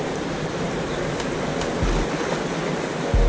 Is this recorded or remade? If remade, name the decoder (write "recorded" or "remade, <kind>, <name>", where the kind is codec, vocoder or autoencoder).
recorded